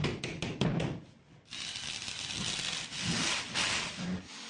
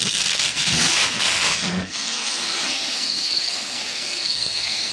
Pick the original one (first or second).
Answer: first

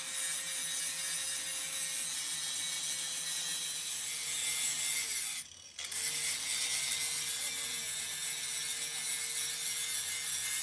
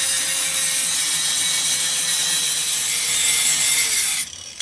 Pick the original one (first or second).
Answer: first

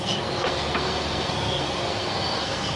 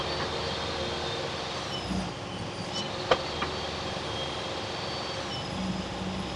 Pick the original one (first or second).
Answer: second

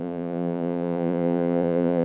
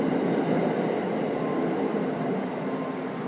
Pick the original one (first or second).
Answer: second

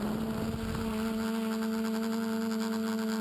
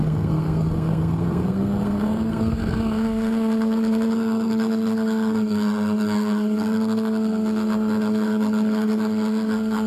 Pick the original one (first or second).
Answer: first